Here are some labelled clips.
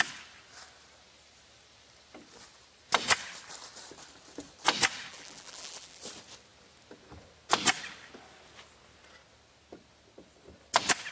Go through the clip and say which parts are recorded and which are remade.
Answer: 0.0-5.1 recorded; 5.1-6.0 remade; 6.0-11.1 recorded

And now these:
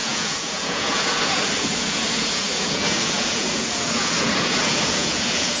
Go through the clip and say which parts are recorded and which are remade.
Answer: 0.0-5.6 remade

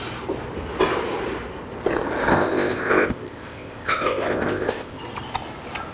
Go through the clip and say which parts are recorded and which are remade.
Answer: 0.0-2.3 recorded; 2.3-5.0 remade; 5.0-5.9 recorded

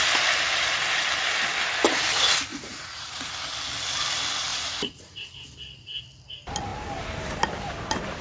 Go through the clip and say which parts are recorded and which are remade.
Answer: 0.0-2.5 recorded; 2.5-3.3 remade; 3.3-4.5 recorded; 4.5-5.3 remade; 5.3-8.2 recorded

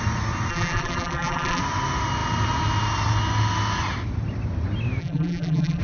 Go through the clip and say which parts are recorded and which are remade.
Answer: 0.0-0.5 recorded; 0.5-1.6 remade; 1.6-5.0 recorded; 5.0-5.8 remade

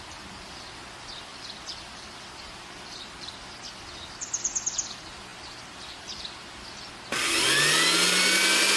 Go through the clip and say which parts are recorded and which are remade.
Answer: 0.0-1.3 recorded; 1.3-3.3 remade; 3.3-5.3 recorded; 5.3-6.9 remade; 6.9-8.8 recorded